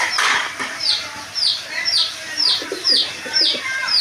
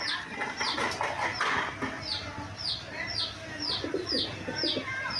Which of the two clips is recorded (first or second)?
second